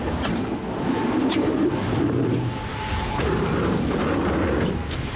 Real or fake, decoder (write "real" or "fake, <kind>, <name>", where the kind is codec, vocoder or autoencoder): real